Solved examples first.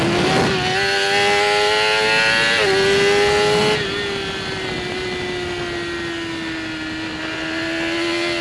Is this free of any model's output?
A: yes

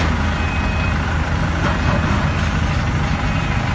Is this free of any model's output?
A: yes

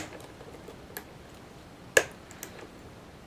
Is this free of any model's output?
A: yes